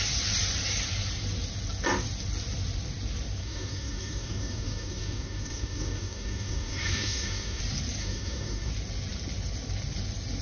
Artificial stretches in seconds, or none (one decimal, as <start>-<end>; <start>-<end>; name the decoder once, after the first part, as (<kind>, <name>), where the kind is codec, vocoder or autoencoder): 3.4-7.6 (codec, DAC); 8.0-8.7